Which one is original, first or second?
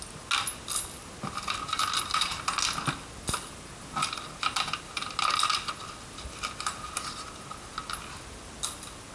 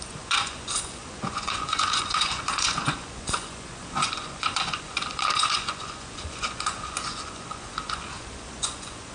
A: first